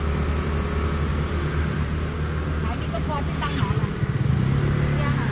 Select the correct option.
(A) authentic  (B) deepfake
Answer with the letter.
A